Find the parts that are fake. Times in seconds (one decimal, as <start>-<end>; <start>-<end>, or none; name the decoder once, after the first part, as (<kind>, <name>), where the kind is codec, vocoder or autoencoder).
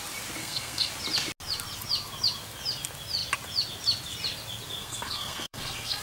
0.4-0.9 (codec, SNAC); 4.8-6.0